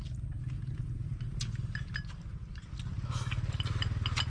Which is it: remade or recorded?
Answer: recorded